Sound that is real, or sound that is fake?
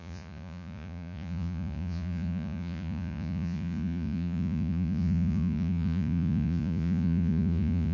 fake